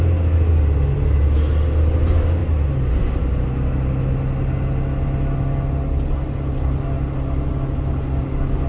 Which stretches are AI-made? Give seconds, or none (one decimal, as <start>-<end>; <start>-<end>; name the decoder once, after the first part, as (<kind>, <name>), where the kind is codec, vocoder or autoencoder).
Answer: none